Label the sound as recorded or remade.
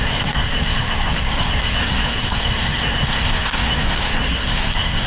remade